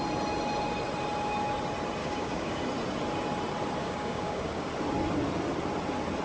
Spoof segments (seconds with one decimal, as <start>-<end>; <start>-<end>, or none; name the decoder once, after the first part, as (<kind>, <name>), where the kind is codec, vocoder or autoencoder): 2.0-2.6 (codec, DAC); 3.8-4.7

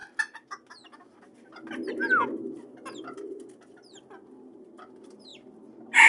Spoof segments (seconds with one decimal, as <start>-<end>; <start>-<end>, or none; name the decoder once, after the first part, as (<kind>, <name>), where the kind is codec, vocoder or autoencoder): none

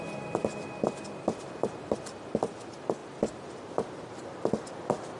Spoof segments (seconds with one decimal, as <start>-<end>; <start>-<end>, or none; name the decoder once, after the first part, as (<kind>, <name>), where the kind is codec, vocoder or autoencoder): 0.4-1.9 (vocoder, BigVGAN v2)

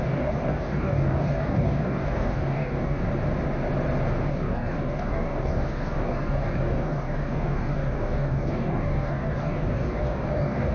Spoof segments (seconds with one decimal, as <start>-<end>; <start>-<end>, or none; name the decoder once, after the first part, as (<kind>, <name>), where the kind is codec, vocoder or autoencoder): 0.0-3.0 (codec, DAC); 4.3-10.7

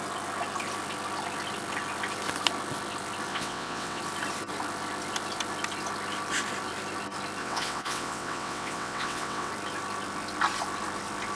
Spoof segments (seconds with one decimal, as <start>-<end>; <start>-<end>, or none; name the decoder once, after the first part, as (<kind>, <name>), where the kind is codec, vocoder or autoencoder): 3.3-4.0 (vocoder, WaveNeXt); 7.4-9.5

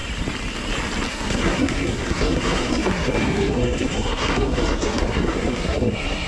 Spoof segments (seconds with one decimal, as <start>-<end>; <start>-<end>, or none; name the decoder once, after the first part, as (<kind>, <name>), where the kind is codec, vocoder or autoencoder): 1.1-6.3 (codec, SNAC)

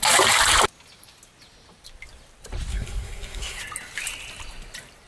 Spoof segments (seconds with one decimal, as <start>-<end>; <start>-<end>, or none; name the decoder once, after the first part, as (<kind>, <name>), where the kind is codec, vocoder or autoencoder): 2.7-3.6 (codec, SNAC)